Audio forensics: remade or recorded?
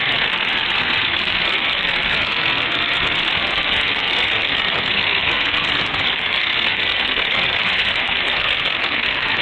remade